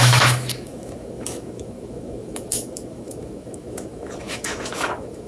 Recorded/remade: remade